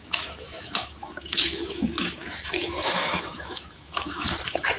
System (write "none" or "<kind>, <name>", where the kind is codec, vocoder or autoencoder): autoencoder, DAC-VAE